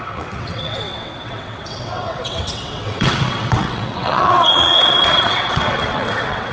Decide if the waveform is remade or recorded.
remade